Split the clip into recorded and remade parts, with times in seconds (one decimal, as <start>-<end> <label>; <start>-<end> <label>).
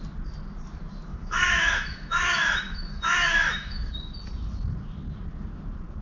0.0-1.1 recorded; 1.1-3.9 remade; 3.9-6.0 recorded